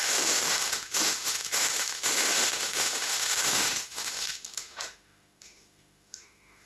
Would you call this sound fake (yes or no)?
yes